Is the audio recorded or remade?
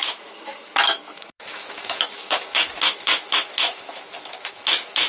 remade